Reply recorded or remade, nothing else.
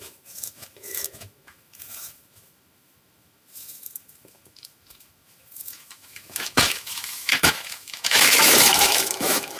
remade